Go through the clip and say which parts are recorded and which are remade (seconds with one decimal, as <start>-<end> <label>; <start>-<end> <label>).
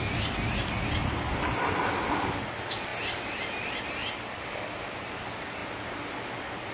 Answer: 0.0-6.7 recorded